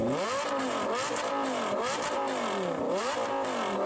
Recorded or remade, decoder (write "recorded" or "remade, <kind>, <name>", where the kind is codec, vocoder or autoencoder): recorded